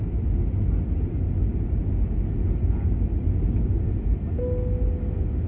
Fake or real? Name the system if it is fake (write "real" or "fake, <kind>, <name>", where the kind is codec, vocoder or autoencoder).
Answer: real